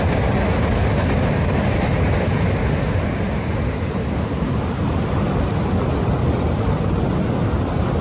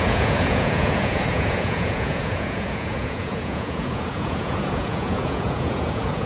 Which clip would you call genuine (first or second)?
first